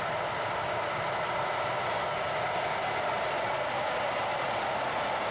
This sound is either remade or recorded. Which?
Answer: recorded